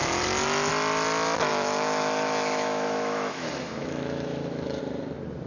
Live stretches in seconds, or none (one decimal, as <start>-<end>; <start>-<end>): 0.0-1.5; 4.8-5.5